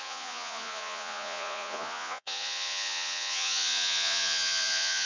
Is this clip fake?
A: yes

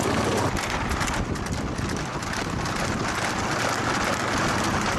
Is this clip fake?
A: no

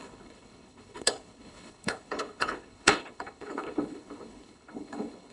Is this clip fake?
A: yes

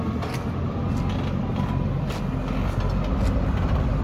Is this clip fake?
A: no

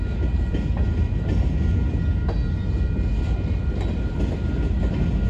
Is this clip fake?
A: no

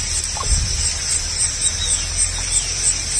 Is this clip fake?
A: no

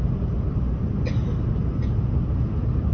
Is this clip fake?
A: no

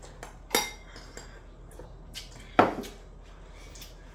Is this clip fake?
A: no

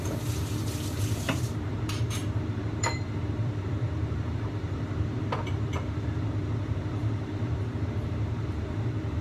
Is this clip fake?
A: yes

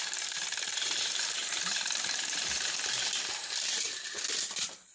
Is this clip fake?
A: yes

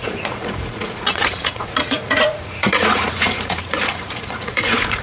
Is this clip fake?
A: yes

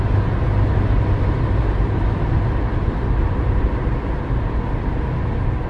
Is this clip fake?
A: no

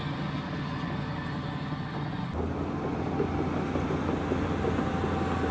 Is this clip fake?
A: no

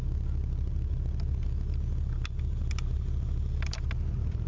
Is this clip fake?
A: no